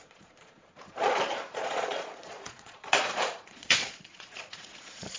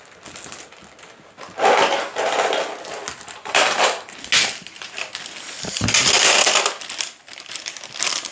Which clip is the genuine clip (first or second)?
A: second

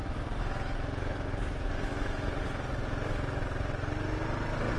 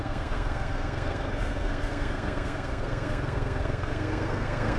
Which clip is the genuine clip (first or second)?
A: first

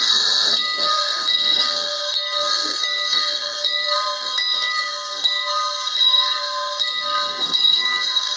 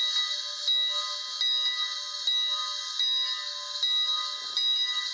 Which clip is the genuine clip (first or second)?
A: second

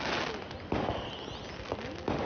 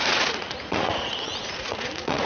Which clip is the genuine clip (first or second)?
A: first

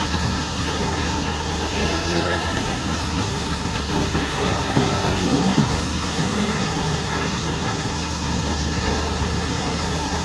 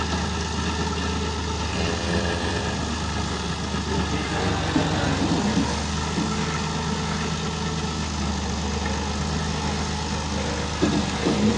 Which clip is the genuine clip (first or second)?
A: second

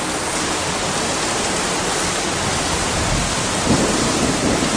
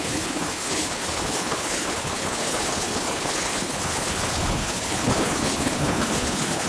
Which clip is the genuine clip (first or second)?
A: first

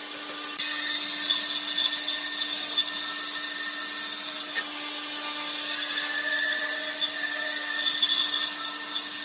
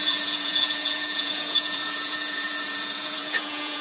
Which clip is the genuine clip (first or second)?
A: first